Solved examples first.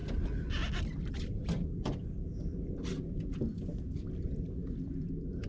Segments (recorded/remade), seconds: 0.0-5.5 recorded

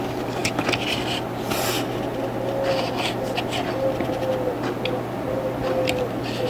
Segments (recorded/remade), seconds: 0.0-6.5 recorded